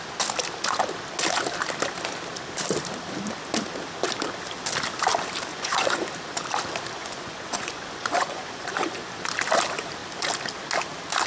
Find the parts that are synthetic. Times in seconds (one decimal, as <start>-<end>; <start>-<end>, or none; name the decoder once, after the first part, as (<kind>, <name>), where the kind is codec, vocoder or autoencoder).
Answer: 5.5-6.1 (vocoder, Vocos); 7.0-9.1